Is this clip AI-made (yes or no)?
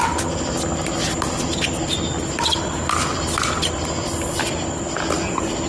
no